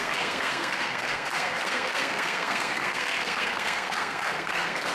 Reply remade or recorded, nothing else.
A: remade